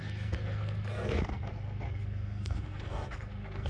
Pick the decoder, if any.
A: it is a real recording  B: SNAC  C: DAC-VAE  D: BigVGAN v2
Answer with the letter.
B